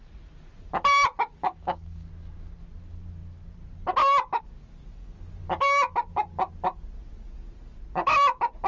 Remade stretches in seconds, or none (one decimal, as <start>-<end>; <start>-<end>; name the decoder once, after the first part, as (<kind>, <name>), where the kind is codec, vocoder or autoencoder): 1.4-2.1 (codec, DAC)